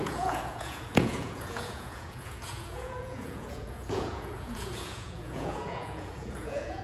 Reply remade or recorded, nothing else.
remade